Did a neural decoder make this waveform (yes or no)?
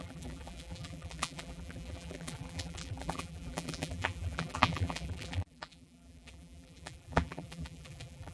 yes